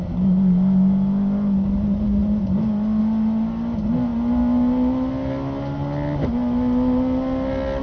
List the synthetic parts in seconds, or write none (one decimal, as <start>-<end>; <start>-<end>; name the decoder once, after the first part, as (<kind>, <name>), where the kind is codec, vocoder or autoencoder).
none

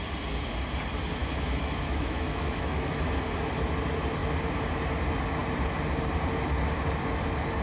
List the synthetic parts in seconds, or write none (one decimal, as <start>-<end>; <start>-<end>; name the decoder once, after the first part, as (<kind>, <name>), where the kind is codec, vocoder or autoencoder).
1.2-3.0 (autoencoder, DAC-VAE)